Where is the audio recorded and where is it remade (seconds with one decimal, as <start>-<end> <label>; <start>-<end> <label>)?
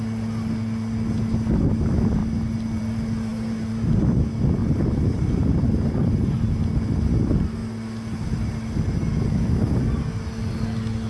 0.0-3.3 recorded; 3.3-4.0 remade; 4.0-4.6 recorded; 4.6-5.9 remade; 5.9-11.1 recorded